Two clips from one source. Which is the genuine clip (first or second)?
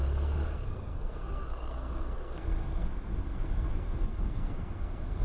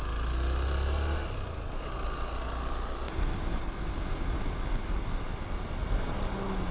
second